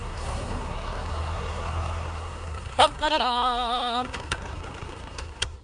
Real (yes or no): no